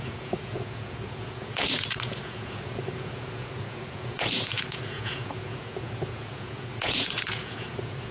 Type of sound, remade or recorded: remade